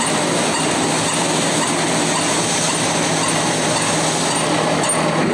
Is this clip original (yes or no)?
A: yes